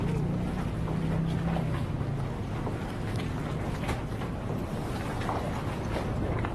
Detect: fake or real real